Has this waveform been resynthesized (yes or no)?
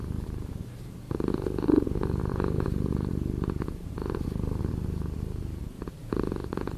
yes